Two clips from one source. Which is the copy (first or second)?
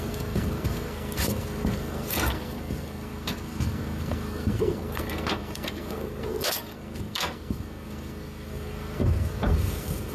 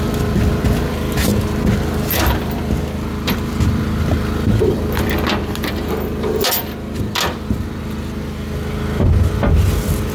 first